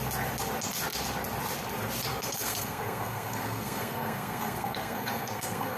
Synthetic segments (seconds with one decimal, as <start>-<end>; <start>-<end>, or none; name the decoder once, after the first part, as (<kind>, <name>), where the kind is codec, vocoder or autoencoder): 2.1-5.8 (codec, SNAC)